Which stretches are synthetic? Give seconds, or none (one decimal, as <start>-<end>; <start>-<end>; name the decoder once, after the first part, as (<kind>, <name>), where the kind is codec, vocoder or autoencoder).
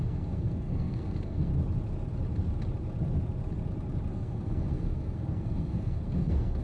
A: 0.0-1.5 (codec, SNAC); 4.1-6.6